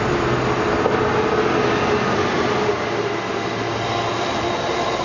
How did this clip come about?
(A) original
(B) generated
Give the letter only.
A